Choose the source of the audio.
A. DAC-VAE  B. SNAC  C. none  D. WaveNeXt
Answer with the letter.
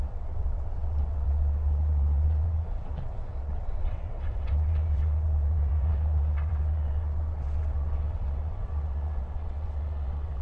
D